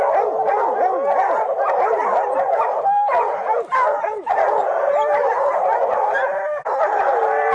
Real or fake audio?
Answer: real